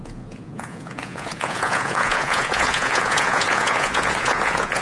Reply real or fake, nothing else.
fake